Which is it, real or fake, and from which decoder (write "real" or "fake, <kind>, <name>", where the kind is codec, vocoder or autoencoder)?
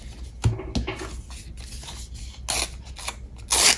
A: real